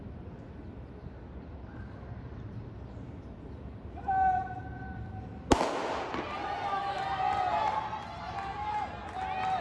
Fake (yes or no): no